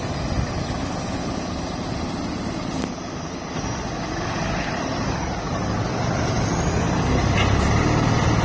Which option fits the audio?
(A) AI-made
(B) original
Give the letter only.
B